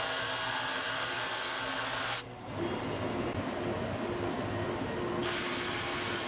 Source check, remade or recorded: recorded